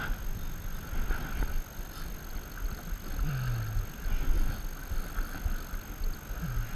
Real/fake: real